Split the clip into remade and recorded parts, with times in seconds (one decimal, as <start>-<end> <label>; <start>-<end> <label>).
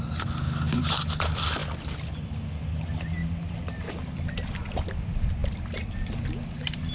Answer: 0.0-6.9 recorded